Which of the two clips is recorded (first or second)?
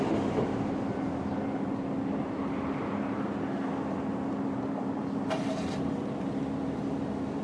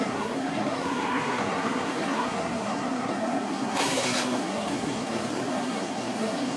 first